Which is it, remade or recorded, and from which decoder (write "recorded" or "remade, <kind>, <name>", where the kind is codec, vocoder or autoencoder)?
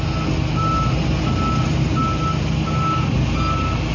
recorded